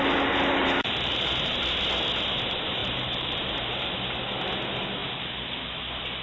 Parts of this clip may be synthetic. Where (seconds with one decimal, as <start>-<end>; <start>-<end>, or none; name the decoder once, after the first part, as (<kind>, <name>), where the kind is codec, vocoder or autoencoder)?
0.6-1.6 (vocoder, BigVGAN v2); 2.8-4.2; 5.0-5.8